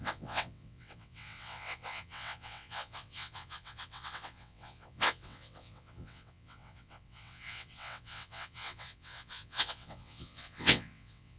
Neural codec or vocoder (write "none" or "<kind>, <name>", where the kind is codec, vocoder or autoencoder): vocoder, WaveNeXt